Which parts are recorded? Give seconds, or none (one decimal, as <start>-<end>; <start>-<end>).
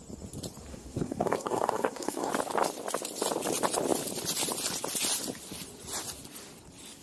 0.0-0.7; 2.3-7.0